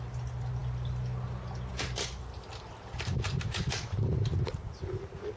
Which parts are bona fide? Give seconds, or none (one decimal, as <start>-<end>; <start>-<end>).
0.0-5.4